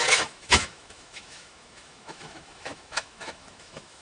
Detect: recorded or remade remade